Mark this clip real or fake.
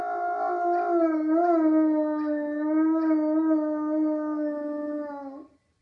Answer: real